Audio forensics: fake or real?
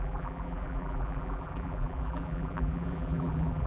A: fake